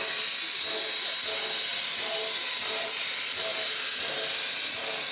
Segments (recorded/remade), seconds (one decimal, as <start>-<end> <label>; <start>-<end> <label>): 0.0-1.7 recorded; 1.7-3.1 remade; 3.1-3.5 recorded; 3.5-4.5 remade; 4.5-5.1 recorded